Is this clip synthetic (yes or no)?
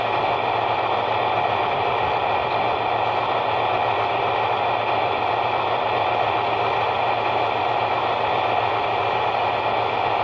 no